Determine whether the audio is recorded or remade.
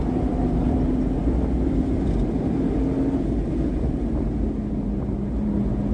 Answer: recorded